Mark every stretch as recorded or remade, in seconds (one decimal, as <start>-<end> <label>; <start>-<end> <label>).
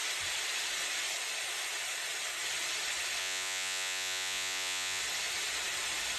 0.0-3.2 recorded; 3.2-5.0 remade; 5.0-6.2 recorded